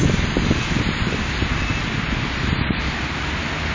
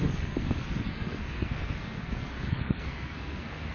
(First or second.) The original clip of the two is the first